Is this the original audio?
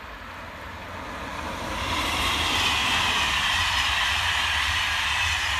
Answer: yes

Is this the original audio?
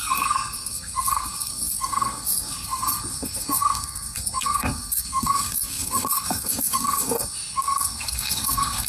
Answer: no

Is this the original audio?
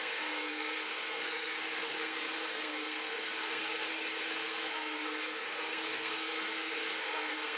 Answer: no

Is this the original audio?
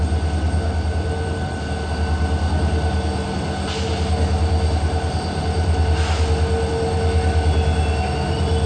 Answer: yes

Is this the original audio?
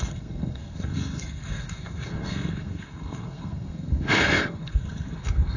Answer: no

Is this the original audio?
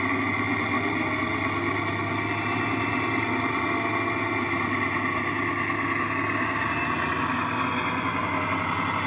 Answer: yes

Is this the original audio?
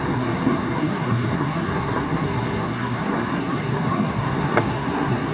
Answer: no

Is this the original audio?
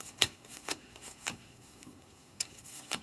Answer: no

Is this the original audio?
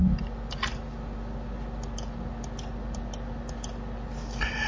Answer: yes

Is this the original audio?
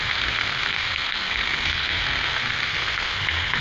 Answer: no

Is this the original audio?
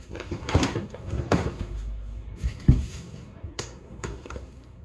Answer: no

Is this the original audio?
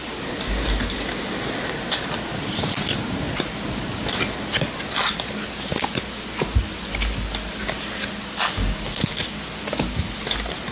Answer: yes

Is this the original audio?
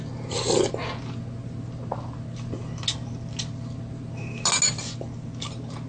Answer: yes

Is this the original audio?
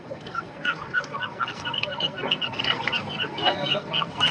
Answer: no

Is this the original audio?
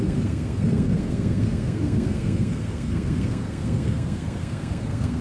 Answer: no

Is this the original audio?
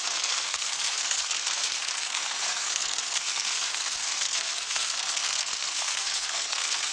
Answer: no